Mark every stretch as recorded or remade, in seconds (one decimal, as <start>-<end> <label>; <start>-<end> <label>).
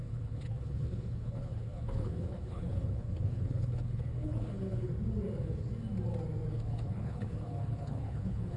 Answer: 0.0-4.9 remade; 4.9-6.5 recorded; 6.5-8.6 remade